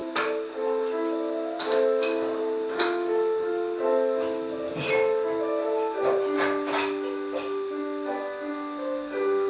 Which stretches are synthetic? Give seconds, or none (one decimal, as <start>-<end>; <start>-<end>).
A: none